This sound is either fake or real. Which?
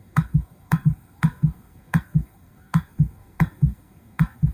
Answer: fake